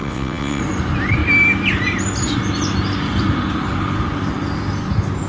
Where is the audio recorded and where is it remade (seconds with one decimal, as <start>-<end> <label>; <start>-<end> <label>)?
0.0-0.6 remade; 0.6-5.3 recorded